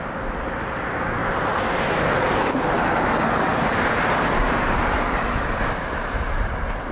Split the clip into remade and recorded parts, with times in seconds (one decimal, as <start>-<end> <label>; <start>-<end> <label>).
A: 0.0-1.2 recorded; 1.2-1.9 remade; 1.9-3.5 recorded; 3.5-6.4 remade; 6.4-6.9 recorded